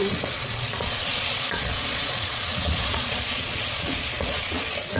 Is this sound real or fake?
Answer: fake